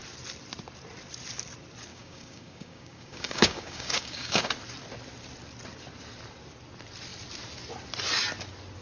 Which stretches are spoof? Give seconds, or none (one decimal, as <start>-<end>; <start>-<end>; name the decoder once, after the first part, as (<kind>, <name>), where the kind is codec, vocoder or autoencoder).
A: 1.9-4.5 (codec, DAC)